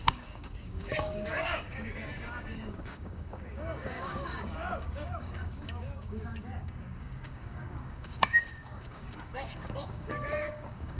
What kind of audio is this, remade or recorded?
remade